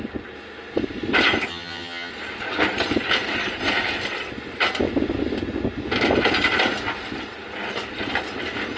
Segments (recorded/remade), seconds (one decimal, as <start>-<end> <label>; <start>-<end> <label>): 0.0-1.5 recorded; 1.5-2.1 remade; 2.1-8.8 recorded